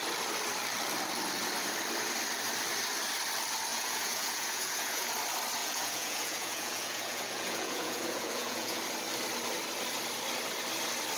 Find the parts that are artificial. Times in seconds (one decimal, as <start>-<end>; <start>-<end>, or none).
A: 3.7-5.1; 5.6-8.8